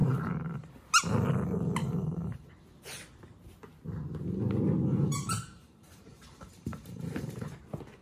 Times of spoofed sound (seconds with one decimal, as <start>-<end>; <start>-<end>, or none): 0.0-0.7; 1.8-2.5; 4.9-7.5